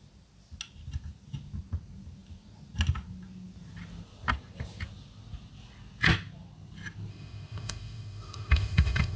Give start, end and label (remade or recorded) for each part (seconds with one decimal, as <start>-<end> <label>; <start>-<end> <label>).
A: 0.0-7.1 recorded; 7.1-9.2 remade